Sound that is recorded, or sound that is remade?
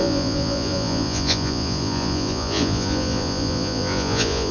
remade